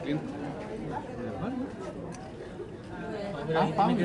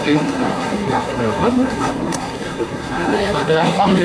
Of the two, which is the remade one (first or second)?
second